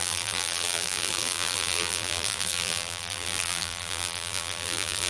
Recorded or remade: remade